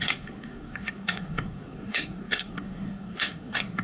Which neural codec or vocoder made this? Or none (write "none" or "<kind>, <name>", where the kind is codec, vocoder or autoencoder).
codec, SNAC